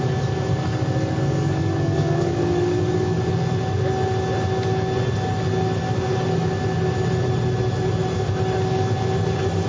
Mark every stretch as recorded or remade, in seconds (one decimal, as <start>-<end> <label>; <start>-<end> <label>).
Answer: 0.0-0.5 recorded; 0.5-3.2 remade; 3.2-9.7 recorded